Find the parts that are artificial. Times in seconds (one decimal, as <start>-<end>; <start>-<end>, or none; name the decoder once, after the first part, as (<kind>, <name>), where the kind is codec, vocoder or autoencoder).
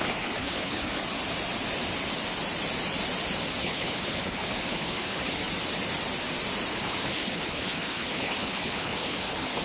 0.0-1.0 (codec, HILCodec); 3.6-5.4; 6.7-9.6